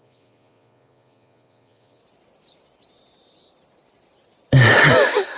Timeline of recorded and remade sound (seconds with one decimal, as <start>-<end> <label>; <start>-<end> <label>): 0.0-2.0 remade; 2.0-5.4 recorded